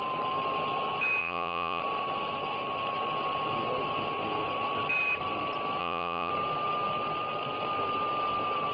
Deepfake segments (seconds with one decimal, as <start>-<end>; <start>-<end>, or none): 1.2-1.8; 5.8-6.3